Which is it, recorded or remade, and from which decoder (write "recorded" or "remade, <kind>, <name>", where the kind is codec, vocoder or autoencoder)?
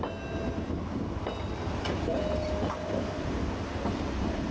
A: recorded